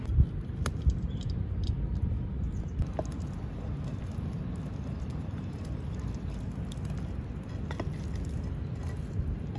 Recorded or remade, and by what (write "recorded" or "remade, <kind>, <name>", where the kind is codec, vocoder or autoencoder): recorded